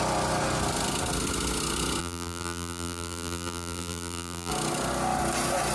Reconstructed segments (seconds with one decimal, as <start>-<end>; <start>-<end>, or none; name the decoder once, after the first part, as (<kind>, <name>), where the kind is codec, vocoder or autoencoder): 2.0-4.5 (vocoder, BigVGAN v2)